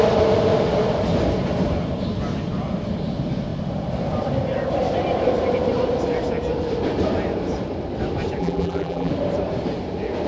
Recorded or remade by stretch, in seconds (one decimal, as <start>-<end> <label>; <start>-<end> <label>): 0.0-8.4 recorded; 8.4-9.1 remade; 9.1-10.3 recorded